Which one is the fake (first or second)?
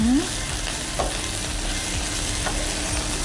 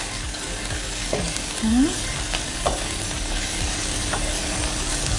second